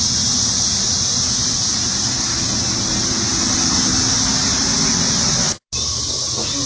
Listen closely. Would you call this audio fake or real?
real